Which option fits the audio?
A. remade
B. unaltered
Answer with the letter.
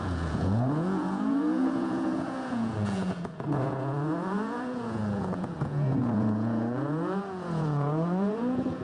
A